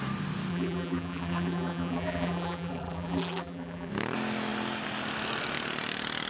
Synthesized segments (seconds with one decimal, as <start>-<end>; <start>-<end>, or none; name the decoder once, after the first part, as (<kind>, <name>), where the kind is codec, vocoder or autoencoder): 0.5-3.9 (vocoder, BigVGAN v2)